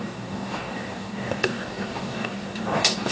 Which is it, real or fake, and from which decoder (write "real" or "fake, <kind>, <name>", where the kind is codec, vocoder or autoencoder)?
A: fake, codec, DAC